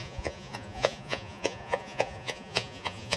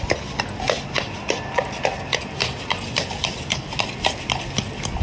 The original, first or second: second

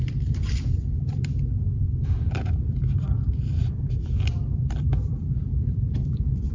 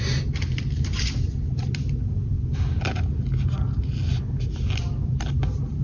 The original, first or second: second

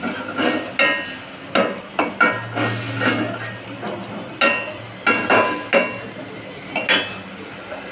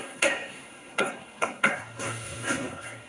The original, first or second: first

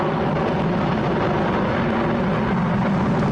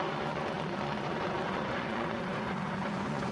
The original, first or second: first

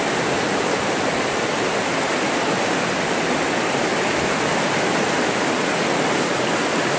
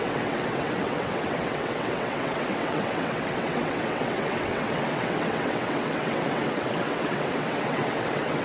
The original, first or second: first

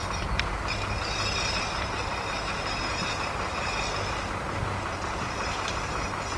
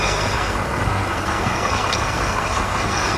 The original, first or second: first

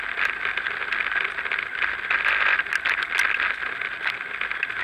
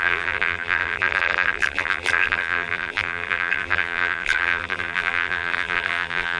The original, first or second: first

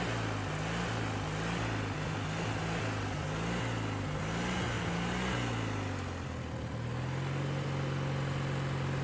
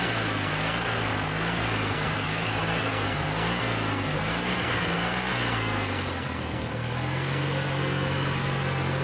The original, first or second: first